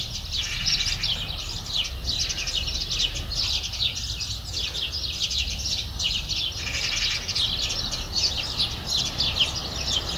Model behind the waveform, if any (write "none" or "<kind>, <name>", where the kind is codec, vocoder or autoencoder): none